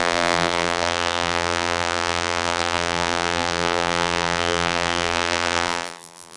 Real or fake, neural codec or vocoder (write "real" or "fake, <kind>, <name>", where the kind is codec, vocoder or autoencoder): fake, vocoder, BigVGAN v2